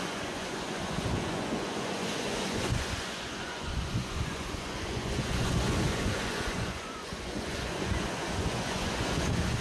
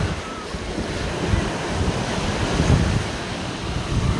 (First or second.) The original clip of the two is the second